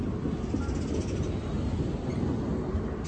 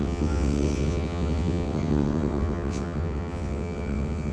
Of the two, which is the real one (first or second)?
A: first